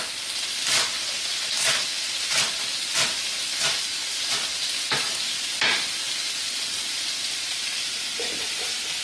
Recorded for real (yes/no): yes